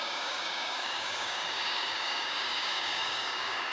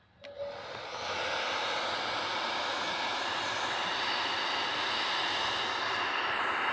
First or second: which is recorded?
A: second